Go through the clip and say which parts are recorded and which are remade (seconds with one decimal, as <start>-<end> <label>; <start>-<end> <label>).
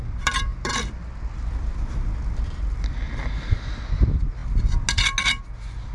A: 0.0-5.9 recorded